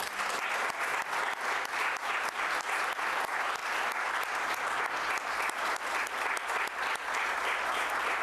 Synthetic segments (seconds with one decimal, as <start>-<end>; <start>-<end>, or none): none